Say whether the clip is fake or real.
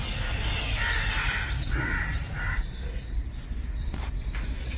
real